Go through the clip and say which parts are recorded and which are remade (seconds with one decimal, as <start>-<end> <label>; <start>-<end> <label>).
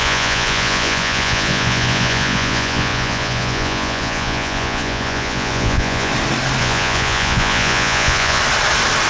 0.0-6.1 remade; 6.1-6.6 recorded; 6.6-8.4 remade; 8.4-9.1 recorded